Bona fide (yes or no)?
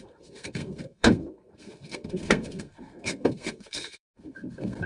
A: no